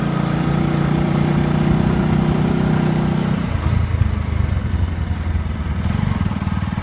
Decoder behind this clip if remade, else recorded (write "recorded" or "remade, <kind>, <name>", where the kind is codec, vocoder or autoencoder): recorded